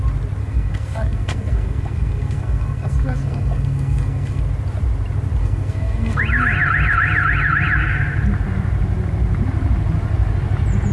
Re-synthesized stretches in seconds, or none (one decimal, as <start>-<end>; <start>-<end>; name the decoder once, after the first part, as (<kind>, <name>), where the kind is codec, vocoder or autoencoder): 0.4-4.4 (codec, SNAC); 5.4-6.2